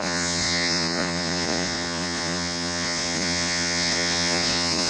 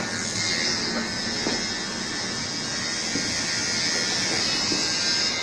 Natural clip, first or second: second